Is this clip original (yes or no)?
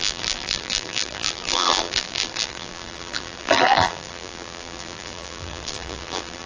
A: no